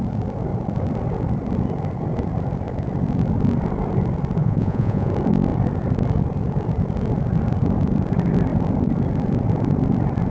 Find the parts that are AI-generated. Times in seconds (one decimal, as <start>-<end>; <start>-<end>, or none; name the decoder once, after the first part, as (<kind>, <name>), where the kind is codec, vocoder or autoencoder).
4.4-5.1 (vocoder, Vocos)